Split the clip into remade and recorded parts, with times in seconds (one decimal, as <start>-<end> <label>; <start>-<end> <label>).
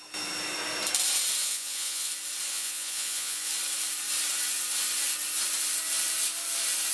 0.0-1.4 recorded; 1.4-2.1 remade; 2.1-2.5 recorded; 2.5-3.5 remade; 3.5-6.9 recorded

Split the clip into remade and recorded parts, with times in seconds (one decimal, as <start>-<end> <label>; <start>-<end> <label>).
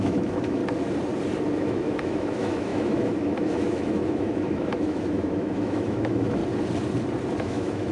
0.0-0.6 remade; 0.6-1.6 recorded; 1.6-6.4 remade; 6.4-7.4 recorded; 7.4-7.9 remade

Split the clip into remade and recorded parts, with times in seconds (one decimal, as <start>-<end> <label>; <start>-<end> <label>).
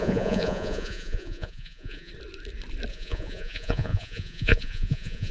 0.0-2.1 remade; 2.1-2.9 recorded; 2.9-5.3 remade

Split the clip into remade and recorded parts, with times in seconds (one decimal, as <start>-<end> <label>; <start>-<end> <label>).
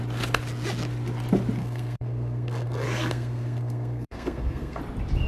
0.0-1.6 recorded; 1.6-4.8 remade; 4.8-5.3 recorded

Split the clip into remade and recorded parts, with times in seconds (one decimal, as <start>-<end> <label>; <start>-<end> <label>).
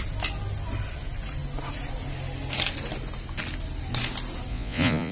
0.0-4.5 recorded; 4.5-5.1 remade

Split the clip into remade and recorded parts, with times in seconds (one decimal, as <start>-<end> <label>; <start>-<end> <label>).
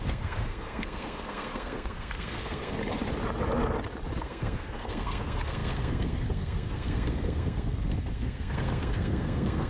0.0-2.8 remade; 2.8-4.2 recorded; 4.2-9.7 remade